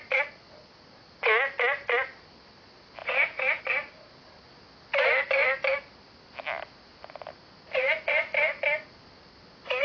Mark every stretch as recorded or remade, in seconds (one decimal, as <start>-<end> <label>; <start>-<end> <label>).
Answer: 0.0-3.0 recorded; 3.0-3.6 remade; 3.6-9.8 recorded